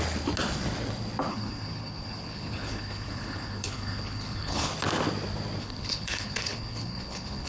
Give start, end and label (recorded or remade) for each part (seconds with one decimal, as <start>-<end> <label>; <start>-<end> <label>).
0.0-1.3 recorded; 1.3-4.7 remade; 4.7-5.6 recorded; 5.6-7.5 remade